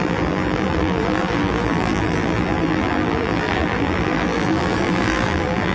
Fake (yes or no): yes